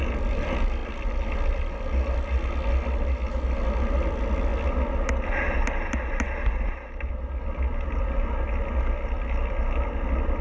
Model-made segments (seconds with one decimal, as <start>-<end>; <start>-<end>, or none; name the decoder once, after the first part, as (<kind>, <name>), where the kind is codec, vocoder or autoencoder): 0.8-1.7 (vocoder, BigVGAN v2)